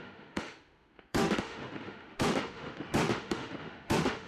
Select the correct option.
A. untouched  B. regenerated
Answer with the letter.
B